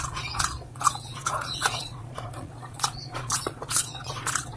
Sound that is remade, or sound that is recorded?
remade